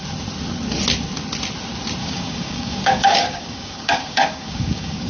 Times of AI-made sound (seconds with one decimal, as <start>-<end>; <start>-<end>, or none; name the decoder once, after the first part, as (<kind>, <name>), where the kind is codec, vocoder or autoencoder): 2.0-5.1 (codec, DAC)